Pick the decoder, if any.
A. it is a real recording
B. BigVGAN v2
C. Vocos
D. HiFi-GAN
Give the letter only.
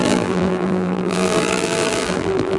B